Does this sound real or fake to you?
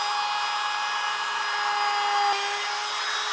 real